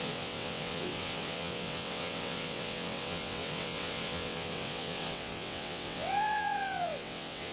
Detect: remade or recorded remade